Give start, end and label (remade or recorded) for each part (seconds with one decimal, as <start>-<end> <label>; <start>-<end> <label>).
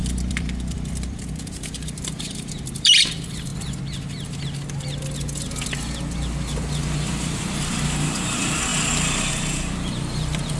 0.0-3.5 remade; 3.5-6.7 recorded; 6.7-10.6 remade